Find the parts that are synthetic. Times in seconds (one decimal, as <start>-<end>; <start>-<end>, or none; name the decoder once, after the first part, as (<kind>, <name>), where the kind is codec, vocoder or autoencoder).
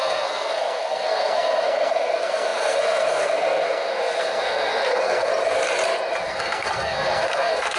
0.0-5.3 (codec, SNAC); 6.2-7.8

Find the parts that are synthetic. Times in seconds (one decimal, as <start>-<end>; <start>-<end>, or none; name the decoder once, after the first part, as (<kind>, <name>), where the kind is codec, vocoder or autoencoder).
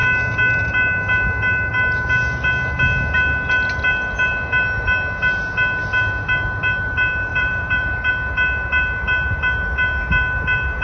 7.3-8.1 (vocoder, BigVGAN v2)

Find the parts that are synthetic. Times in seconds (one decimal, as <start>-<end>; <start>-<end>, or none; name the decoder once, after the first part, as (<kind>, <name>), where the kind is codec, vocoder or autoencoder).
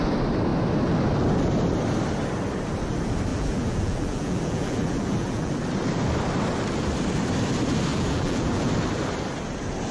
3.3-5.5 (vocoder, BigVGAN v2); 7.9-8.7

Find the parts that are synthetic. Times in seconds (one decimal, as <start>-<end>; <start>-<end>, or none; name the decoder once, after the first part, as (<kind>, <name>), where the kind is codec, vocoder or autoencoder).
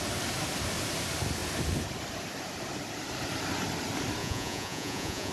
4.2-5.3 (vocoder, Vocos)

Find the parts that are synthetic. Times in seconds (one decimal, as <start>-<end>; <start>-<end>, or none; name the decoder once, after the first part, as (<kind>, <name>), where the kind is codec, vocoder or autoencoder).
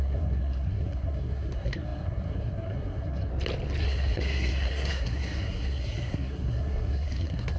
0.0-3.3 (codec, SNAC); 3.8-7.6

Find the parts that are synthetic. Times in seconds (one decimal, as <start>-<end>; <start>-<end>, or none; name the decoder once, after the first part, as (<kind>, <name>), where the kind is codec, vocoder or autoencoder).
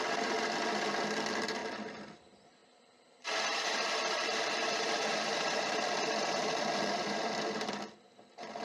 2.6-7.7 (vocoder, BigVGAN v2)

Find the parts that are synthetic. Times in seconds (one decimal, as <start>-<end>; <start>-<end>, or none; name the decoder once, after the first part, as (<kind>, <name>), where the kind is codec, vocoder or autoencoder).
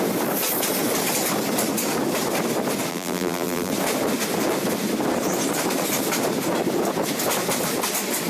2.9-3.7 (vocoder, BigVGAN v2)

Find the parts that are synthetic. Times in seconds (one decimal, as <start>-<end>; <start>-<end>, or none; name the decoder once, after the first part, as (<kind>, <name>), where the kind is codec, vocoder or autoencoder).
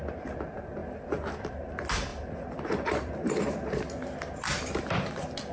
0.8-1.5 (vocoder, BigVGAN v2); 2.1-3.2